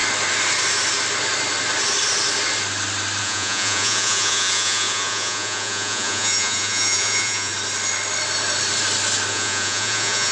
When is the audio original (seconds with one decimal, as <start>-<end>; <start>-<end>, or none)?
0.0-3.2; 7.5-9.3